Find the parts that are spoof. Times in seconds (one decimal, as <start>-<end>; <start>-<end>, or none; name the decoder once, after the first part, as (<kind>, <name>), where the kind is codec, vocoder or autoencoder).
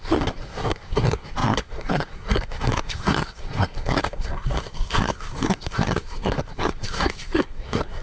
0.0-8.0 (codec, SNAC)